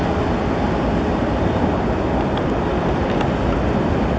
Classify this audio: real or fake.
real